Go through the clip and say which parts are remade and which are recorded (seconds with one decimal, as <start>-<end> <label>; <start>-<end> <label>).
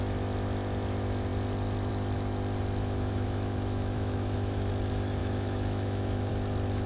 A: 0.0-2.8 recorded; 2.8-4.7 remade; 4.7-5.2 recorded; 5.2-6.3 remade; 6.3-6.9 recorded